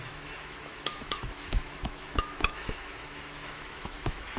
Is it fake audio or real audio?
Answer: fake